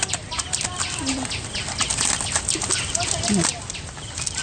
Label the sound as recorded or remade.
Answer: recorded